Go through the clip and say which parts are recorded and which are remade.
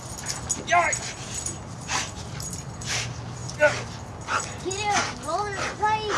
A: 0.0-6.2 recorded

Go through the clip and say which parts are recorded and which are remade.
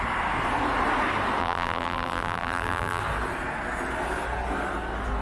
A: 0.0-1.4 recorded; 1.4-3.0 remade; 3.0-5.2 recorded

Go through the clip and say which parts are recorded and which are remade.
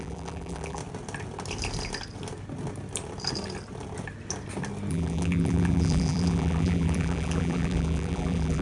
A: 0.0-0.8 remade; 0.8-4.9 recorded; 4.9-8.6 remade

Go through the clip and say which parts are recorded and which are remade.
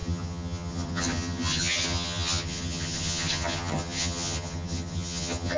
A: 0.0-5.6 remade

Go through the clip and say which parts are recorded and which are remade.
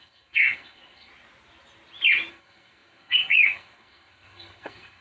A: 0.0-1.1 remade; 1.1-2.3 recorded; 2.3-5.0 remade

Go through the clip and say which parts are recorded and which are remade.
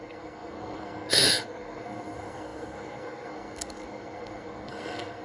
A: 0.0-5.2 remade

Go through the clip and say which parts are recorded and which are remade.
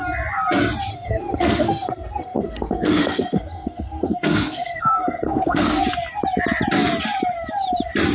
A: 0.0-0.9 recorded; 0.9-5.8 remade; 5.8-8.1 recorded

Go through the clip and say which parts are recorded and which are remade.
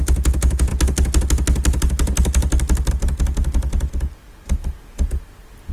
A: 0.0-5.7 recorded